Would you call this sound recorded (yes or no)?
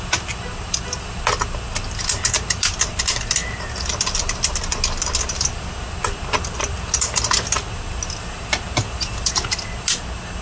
yes